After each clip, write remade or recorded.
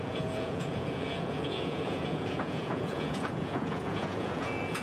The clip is remade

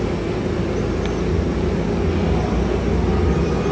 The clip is recorded